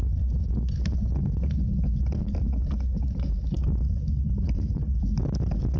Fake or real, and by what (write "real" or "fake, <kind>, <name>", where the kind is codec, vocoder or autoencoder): real